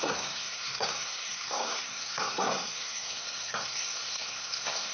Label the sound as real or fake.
fake